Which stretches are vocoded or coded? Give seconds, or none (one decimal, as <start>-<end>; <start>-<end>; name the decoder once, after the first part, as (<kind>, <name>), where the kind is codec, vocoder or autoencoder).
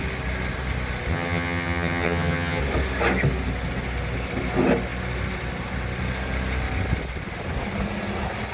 1.1-2.6 (vocoder, HiFi-GAN)